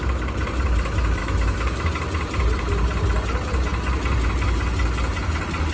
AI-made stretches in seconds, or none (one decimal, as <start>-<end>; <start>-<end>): 1.2-1.9